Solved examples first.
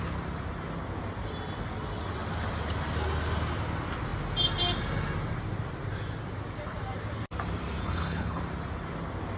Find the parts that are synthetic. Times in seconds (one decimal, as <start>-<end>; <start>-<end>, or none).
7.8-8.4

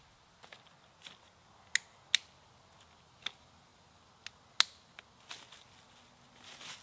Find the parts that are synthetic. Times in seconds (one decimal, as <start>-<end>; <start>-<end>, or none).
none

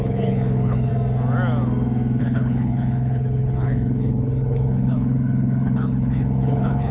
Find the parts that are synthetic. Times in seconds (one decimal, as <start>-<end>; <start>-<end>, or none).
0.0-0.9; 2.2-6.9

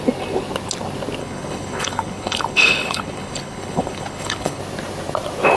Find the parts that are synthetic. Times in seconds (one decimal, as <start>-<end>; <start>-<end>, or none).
1.2-4.6